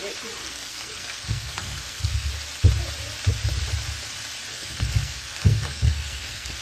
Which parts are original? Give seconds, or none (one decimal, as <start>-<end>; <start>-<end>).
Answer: 0.0-0.4; 2.3-4.5